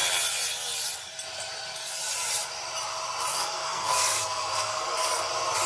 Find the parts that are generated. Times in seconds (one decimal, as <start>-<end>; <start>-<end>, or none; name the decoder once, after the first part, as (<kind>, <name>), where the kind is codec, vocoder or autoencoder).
3.3-5.3 (codec, SNAC)